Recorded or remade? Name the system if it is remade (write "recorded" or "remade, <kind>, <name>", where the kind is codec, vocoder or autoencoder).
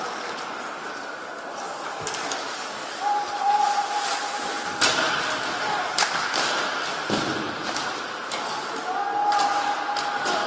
recorded